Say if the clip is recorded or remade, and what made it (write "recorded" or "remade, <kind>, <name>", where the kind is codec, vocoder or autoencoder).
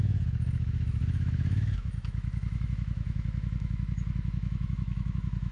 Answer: remade, autoencoder, DAC-VAE